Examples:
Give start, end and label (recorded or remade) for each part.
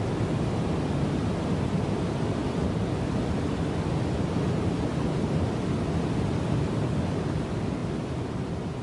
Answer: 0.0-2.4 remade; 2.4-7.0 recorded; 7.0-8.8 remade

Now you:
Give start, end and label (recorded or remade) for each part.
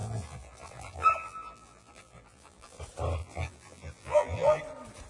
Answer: 0.0-2.8 remade; 2.8-3.2 recorded; 3.2-4.6 remade; 4.6-5.1 recorded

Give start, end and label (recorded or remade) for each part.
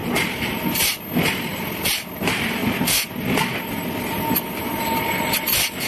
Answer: 0.0-2.6 remade; 2.6-5.0 recorded; 5.0-5.9 remade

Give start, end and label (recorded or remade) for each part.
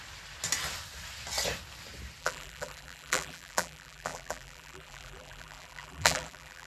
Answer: 0.0-2.2 recorded; 2.2-6.7 remade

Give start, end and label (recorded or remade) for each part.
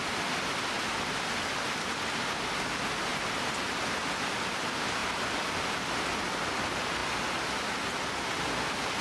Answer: 0.0-3.1 recorded; 3.1-4.1 remade; 4.1-5.0 recorded; 5.0-6.1 remade; 6.1-9.0 recorded